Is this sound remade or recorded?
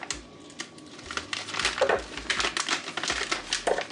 recorded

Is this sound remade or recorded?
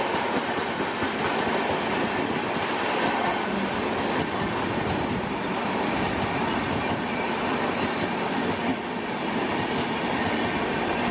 recorded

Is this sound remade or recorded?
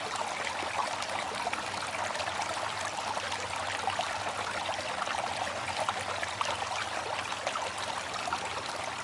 recorded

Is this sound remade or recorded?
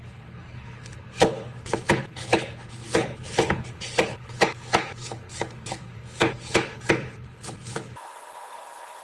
remade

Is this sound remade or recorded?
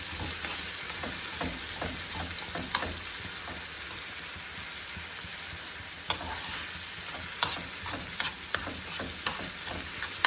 recorded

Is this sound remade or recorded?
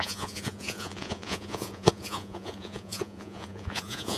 remade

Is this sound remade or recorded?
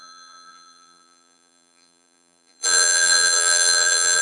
remade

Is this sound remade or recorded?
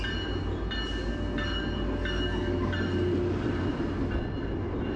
recorded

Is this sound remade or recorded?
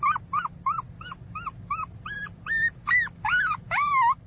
recorded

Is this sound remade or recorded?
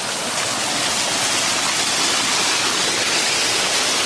recorded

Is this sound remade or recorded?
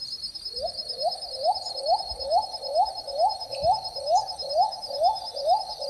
recorded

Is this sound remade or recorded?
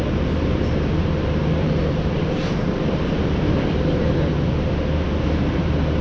remade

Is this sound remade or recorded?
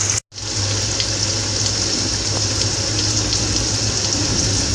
recorded